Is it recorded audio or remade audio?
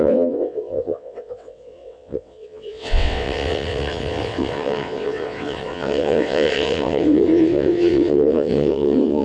remade